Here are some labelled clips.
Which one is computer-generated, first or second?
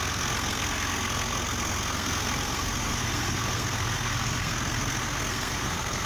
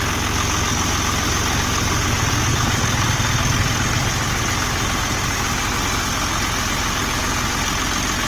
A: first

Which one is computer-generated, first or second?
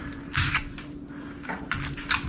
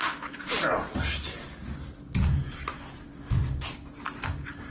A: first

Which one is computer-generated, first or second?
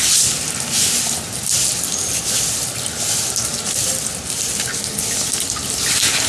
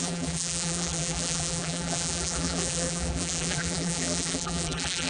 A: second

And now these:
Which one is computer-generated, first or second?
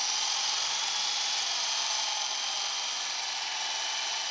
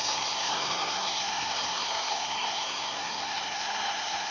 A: second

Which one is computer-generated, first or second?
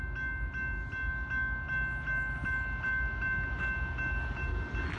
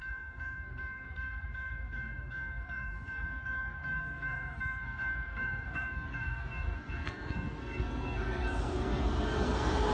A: second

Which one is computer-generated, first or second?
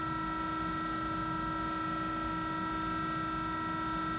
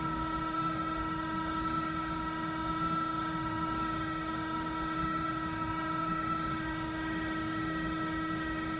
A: second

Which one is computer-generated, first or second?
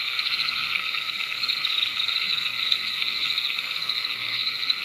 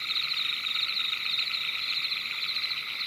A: first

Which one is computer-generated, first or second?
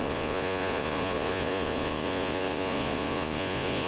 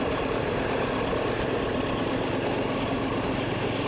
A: first